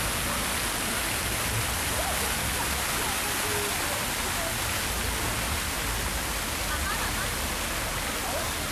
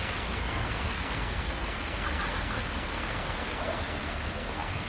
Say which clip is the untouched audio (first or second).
first